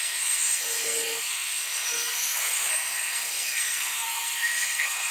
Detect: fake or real fake